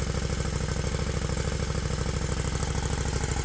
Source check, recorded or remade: recorded